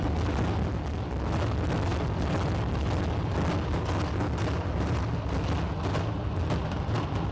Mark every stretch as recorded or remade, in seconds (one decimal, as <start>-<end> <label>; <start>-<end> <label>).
0.0-7.3 recorded